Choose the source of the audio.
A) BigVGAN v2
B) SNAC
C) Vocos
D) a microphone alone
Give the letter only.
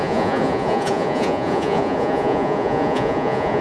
C